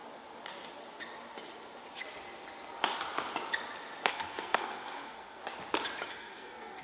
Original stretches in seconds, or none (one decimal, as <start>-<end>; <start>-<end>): 0.0-4.1; 5.4-6.1

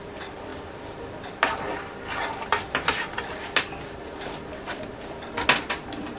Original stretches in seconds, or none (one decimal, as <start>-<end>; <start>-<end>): 4.9-5.6

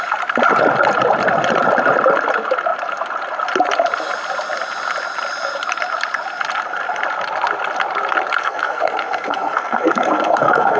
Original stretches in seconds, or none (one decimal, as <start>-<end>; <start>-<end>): 0.0-8.4

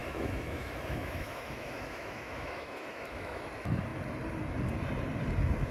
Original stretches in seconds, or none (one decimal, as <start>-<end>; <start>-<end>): 3.4-5.7